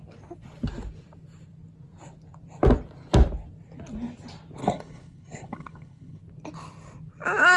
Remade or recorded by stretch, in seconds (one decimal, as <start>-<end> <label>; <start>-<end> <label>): 0.0-4.6 recorded; 4.6-6.2 remade; 6.2-7.6 recorded